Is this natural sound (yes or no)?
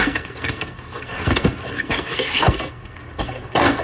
no